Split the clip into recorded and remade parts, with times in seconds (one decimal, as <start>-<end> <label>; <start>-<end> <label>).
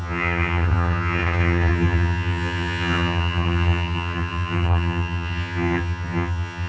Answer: 0.0-6.7 remade